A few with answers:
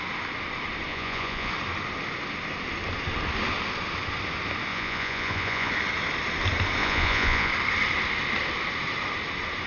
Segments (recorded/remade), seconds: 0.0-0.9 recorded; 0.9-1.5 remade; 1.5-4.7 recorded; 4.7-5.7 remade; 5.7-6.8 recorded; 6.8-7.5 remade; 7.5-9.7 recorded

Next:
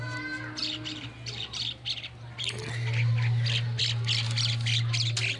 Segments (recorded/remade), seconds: 0.0-5.4 recorded

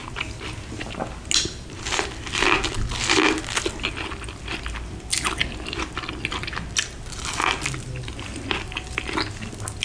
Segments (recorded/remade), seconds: 0.0-9.8 recorded

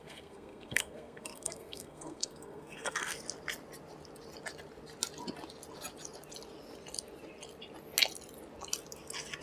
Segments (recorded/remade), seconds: 0.0-3.2 remade; 3.2-9.4 recorded

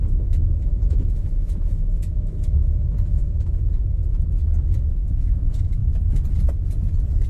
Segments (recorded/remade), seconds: 0.0-4.0 remade; 4.0-5.2 recorded; 5.2-5.8 remade; 5.8-7.3 recorded

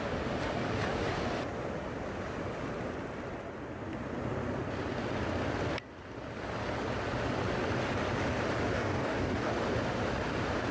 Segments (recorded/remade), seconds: 0.0-8.7 recorded; 8.7-9.5 remade; 9.5-10.7 recorded

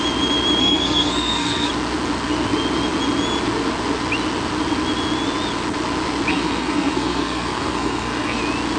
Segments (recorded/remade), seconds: 0.0-0.6 recorded; 0.6-1.7 remade; 1.7-6.3 recorded; 6.3-8.4 remade; 8.4-8.8 recorded

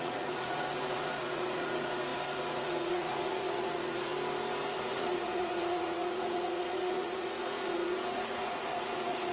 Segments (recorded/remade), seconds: 0.0-4.1 remade; 4.1-4.7 recorded; 4.7-9.3 remade